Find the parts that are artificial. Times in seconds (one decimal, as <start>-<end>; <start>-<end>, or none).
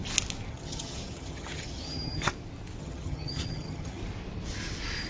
0.5-2.3; 2.8-4.0